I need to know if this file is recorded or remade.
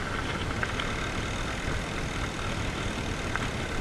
recorded